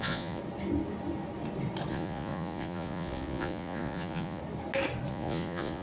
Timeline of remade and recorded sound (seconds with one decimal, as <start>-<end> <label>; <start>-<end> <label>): 0.0-0.4 remade; 0.4-1.9 recorded; 1.9-4.4 remade; 4.4-5.1 recorded; 5.1-5.8 remade